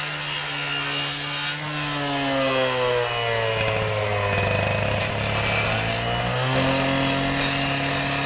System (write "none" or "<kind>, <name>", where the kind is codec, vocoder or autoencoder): none